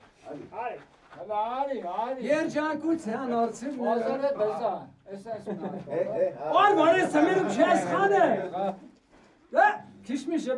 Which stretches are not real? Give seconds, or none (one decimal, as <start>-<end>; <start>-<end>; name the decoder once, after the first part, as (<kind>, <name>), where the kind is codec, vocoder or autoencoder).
none